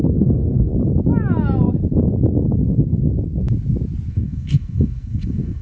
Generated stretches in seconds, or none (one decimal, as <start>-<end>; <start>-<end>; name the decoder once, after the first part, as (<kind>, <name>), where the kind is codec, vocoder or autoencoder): 0.0-0.7 (codec, SNAC); 4.1-5.6

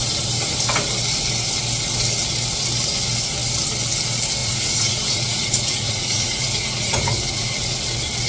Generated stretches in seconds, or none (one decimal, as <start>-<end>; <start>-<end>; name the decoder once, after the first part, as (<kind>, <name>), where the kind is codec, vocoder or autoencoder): 4.4-7.8 (vocoder, Vocos)

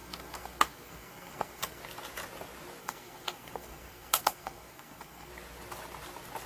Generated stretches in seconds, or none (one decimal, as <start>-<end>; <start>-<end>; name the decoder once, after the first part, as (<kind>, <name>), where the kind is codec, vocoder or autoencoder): 0.0-1.8 (codec, SNAC); 2.8-5.3

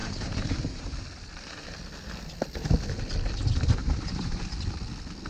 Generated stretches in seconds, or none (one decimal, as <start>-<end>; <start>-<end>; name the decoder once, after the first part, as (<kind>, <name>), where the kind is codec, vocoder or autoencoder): 0.0-0.9 (vocoder, BigVGAN v2); 3.8-4.4

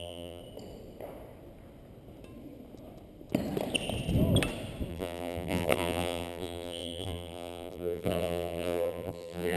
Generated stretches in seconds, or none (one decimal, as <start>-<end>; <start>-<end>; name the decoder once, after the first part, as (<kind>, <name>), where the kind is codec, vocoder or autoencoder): 0.0-0.4 (vocoder, BigVGAN v2); 4.9-9.6

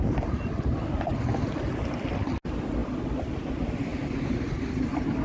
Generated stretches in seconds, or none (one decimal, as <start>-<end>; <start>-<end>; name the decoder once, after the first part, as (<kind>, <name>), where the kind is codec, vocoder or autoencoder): none

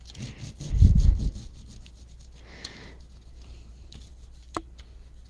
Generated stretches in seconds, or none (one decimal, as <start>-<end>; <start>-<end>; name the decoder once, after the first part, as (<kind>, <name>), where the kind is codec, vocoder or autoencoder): none